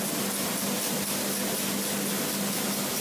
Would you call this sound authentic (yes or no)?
yes